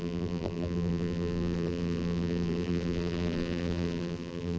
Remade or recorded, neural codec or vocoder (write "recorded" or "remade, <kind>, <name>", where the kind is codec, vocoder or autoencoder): remade, vocoder, BigVGAN v2